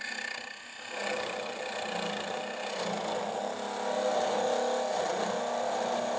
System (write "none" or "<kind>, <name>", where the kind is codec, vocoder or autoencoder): none